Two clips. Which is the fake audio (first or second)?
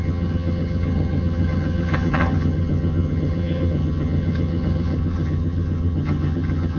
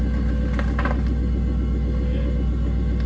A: first